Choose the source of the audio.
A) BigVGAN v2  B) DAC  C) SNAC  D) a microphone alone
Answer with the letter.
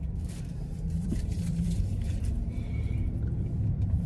A